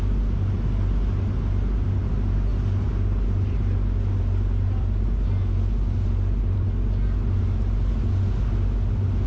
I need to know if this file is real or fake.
real